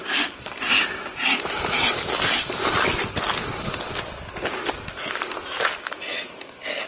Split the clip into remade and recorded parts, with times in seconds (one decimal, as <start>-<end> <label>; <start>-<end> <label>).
0.0-6.9 recorded